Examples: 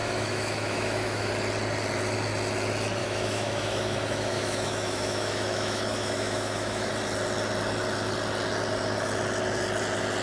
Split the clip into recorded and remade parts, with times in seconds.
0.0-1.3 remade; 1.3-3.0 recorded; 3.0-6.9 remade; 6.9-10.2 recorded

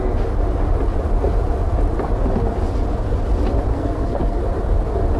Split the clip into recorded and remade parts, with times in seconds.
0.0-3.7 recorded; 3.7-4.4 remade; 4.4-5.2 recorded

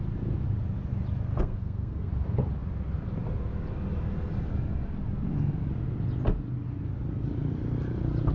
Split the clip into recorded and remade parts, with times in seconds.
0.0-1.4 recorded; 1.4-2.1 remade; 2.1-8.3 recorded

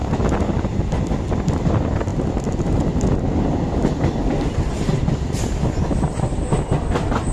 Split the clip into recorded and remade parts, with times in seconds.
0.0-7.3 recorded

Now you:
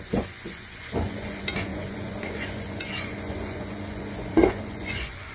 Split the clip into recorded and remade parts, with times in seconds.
0.0-5.3 remade